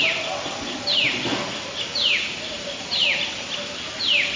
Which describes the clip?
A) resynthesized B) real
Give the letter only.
B